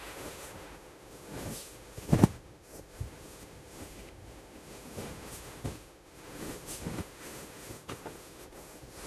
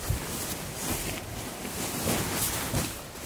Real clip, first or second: second